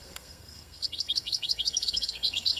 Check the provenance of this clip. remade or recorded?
remade